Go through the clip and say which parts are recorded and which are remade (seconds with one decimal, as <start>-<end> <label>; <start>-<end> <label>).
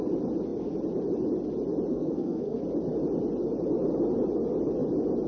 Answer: 0.0-1.9 recorded; 1.9-2.6 remade; 2.6-5.3 recorded